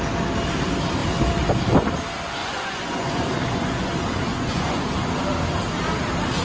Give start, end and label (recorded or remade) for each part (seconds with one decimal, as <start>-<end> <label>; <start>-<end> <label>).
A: 0.0-2.4 recorded; 2.4-3.9 remade; 3.9-4.3 recorded; 4.3-4.9 remade; 4.9-6.4 recorded